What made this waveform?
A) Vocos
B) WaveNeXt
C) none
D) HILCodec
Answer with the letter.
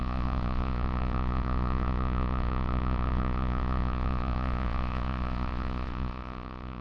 A